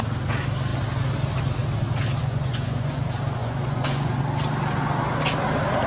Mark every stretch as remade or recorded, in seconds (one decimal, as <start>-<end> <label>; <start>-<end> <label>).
0.0-2.2 recorded; 2.2-3.0 remade; 3.0-3.4 recorded; 3.4-4.2 remade; 4.2-5.9 recorded